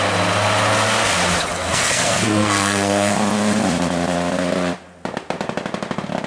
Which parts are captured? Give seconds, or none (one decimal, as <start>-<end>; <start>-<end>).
0.0-1.6; 3.1-6.3